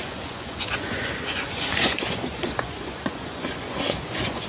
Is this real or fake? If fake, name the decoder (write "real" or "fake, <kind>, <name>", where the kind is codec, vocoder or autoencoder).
fake, vocoder, Vocos